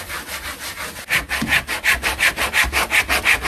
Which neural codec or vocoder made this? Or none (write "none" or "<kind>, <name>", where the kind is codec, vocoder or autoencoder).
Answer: none